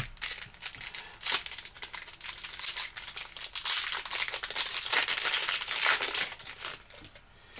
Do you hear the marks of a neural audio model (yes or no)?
no